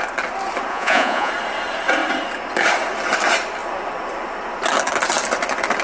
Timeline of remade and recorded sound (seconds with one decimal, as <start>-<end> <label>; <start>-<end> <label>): 0.0-0.7 recorded; 0.7-1.3 remade; 1.3-5.8 recorded

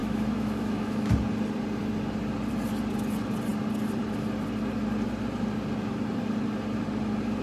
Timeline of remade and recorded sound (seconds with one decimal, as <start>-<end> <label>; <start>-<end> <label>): 0.0-1.1 remade; 1.1-7.4 recorded

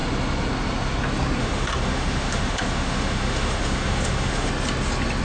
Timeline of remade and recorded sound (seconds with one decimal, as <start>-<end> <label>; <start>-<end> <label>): 0.0-1.4 recorded; 1.4-4.5 remade; 4.5-5.2 recorded

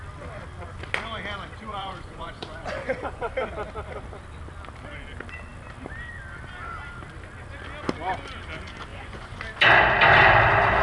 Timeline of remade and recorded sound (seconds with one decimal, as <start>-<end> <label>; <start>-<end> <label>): 0.0-1.7 recorded; 1.7-3.3 remade; 3.3-8.9 recorded; 8.9-9.4 remade; 9.4-10.8 recorded

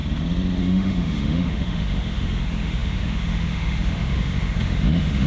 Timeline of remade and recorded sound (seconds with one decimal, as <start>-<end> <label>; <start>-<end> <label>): 0.0-0.6 recorded; 0.6-5.3 remade

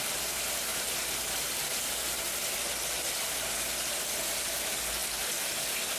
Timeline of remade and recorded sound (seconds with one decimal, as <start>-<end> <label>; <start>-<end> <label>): 0.0-6.0 recorded

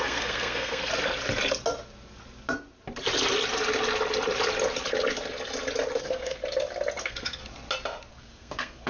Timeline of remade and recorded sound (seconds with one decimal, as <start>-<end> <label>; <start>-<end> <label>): 0.0-0.9 remade; 0.9-6.0 recorded; 6.0-6.4 remade; 6.4-7.0 recorded; 7.0-7.4 remade; 7.4-8.1 recorded; 8.1-8.9 remade

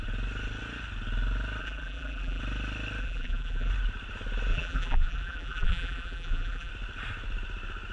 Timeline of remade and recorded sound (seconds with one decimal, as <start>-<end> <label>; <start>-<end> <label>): 0.0-1.6 recorded; 1.6-2.4 remade; 2.4-3.0 recorded; 3.0-3.7 remade; 3.7-4.5 recorded; 4.5-6.7 remade; 6.7-7.9 recorded